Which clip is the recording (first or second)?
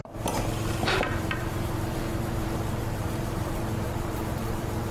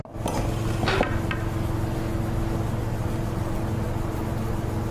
second